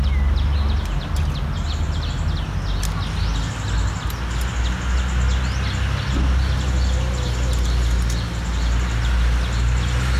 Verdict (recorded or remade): recorded